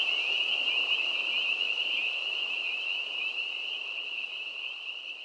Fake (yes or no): no